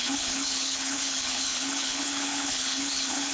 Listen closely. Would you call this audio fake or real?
fake